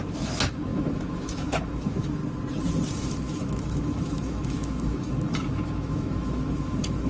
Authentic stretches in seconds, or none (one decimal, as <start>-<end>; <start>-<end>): 2.2-3.0